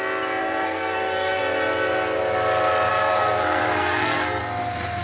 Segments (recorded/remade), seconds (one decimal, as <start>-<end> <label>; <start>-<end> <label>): 0.0-0.4 recorded; 0.4-1.4 remade; 1.4-2.9 recorded; 2.9-4.4 remade; 4.4-5.0 recorded